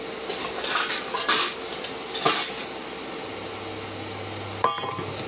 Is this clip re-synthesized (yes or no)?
no